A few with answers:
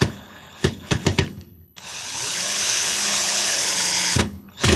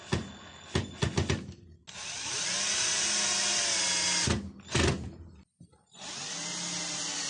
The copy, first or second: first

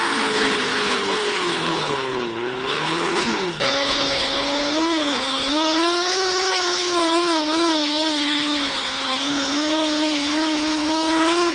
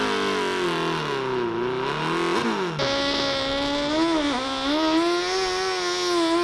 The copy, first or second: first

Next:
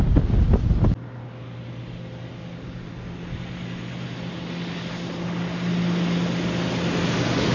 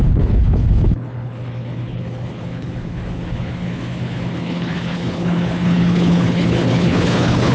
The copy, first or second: second